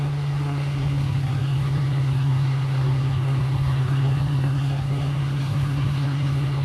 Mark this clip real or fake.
fake